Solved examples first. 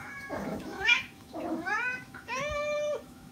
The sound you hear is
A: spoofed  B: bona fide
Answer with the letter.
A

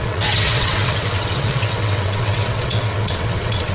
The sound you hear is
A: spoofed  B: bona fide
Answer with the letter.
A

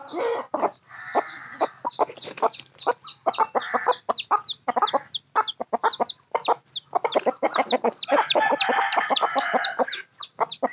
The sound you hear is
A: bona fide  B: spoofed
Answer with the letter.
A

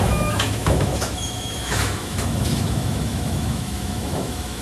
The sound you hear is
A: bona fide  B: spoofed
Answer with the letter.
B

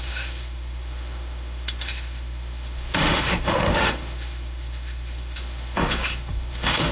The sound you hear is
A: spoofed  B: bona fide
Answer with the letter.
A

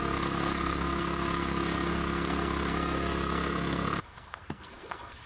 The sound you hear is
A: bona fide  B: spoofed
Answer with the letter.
B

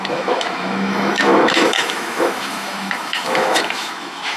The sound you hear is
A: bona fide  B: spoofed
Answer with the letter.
B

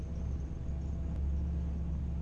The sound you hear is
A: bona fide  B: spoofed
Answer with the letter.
A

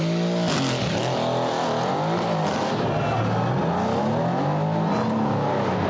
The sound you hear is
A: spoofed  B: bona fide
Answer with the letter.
B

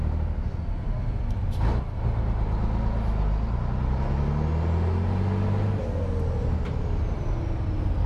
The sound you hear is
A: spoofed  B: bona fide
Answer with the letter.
B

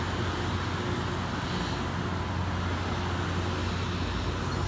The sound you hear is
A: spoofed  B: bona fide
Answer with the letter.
B